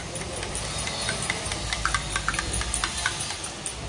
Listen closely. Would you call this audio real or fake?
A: fake